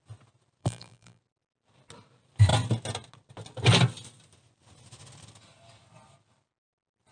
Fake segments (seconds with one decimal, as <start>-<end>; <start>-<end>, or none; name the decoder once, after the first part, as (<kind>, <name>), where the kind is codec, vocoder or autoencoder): 0.6-1.2 (vocoder, BigVGAN v2)